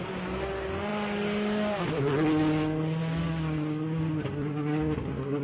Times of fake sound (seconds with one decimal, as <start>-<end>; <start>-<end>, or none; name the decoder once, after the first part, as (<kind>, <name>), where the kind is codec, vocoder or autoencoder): none